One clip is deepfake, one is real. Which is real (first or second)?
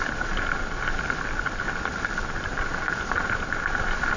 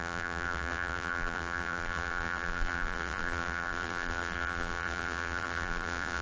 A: first